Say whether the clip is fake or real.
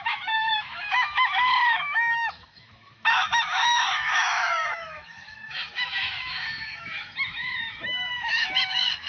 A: fake